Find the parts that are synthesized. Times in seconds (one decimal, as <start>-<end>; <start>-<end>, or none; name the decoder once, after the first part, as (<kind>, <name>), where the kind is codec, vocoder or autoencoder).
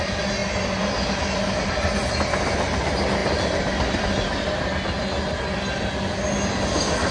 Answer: none